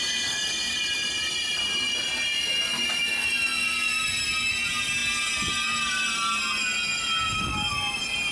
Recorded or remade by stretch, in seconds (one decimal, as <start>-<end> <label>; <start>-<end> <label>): 0.0-8.3 recorded